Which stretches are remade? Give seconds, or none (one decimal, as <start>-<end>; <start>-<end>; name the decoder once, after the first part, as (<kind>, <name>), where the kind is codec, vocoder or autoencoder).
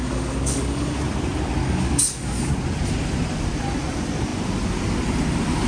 0.0-1.0 (codec, DAC); 1.6-2.5